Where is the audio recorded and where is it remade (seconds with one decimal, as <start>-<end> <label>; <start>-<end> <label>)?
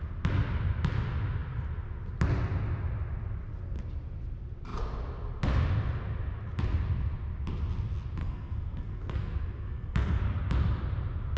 0.0-8.2 recorded; 8.2-10.2 remade; 10.2-11.4 recorded